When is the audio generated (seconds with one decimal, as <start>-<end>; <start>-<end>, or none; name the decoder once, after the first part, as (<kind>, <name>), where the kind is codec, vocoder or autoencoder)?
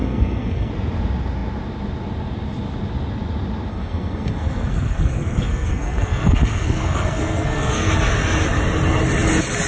0.0-0.7 (codec, SNAC); 3.7-7.9